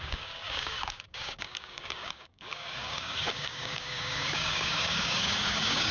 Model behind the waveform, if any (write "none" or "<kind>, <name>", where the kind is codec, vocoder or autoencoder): codec, DAC